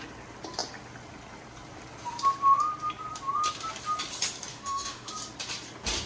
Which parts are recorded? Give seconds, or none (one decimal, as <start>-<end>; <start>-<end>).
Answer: 0.0-4.5; 5.1-6.1